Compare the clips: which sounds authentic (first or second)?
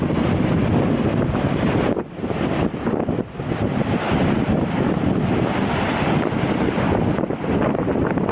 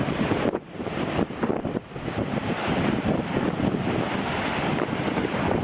first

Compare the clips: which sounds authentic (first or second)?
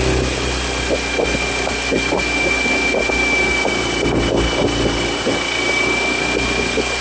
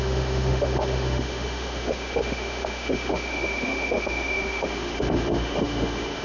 first